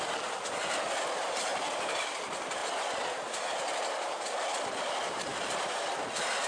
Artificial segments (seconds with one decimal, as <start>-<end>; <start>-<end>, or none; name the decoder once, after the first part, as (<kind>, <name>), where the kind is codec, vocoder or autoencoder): 1.5-2.1 (vocoder, BigVGAN v2); 5.3-5.8